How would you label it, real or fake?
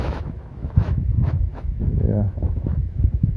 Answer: fake